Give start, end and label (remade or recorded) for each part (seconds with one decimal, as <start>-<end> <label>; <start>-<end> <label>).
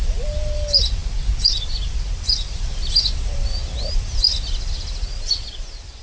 0.0-6.0 recorded